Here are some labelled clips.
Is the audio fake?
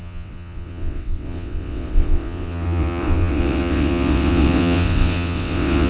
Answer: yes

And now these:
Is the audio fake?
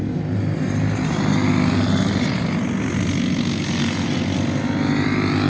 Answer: no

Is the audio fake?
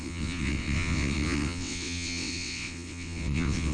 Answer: yes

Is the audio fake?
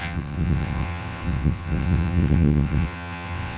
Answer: yes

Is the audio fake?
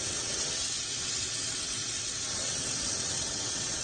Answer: yes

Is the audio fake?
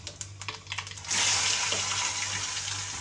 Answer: no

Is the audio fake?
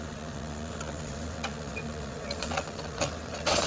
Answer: yes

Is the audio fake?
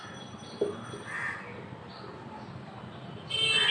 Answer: no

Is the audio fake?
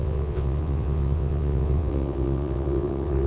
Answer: yes